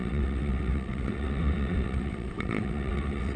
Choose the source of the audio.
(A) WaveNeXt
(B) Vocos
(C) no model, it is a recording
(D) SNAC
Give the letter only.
A